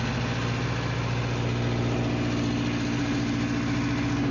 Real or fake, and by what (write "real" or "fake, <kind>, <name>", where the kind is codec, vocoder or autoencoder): real